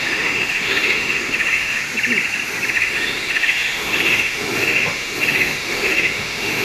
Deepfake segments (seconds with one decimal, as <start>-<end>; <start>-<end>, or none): 0.0-1.8; 2.7-6.6